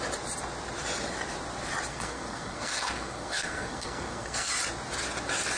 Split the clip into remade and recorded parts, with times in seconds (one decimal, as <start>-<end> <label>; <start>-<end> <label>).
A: 0.0-1.9 recorded; 1.9-4.5 remade; 4.5-5.6 recorded